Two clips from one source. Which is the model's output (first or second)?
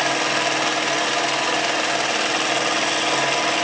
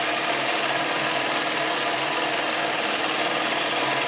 second